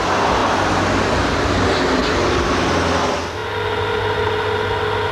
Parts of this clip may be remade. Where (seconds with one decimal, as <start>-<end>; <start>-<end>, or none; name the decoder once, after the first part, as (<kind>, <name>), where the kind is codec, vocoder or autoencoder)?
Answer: none